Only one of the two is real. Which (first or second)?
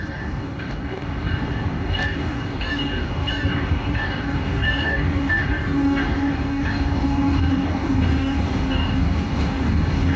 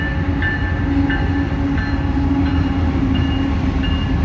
second